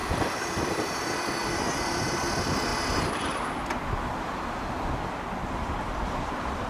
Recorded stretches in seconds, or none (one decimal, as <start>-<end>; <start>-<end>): 2.7-5.5